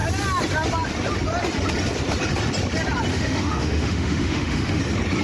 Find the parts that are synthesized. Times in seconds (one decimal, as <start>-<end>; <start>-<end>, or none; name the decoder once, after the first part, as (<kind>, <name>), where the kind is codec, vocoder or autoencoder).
3.1-4.8 (autoencoder, DAC-VAE)